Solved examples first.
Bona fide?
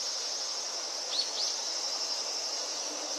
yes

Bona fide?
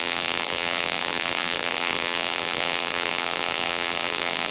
no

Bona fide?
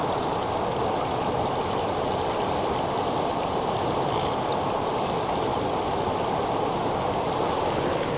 yes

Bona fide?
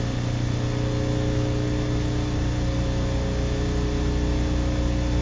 yes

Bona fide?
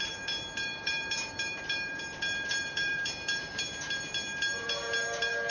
no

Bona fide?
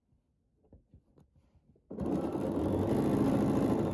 no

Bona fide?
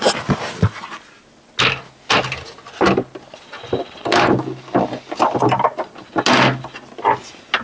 yes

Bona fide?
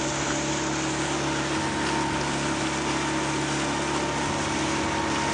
yes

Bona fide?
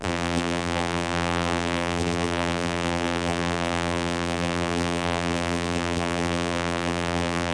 no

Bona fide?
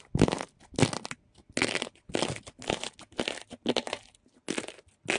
yes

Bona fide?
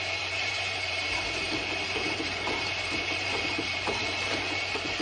no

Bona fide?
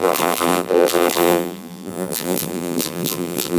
no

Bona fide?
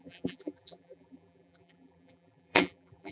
no